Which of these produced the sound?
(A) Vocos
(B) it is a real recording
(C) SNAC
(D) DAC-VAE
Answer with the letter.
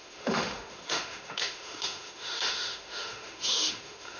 D